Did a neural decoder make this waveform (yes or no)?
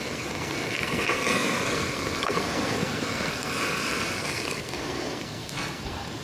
yes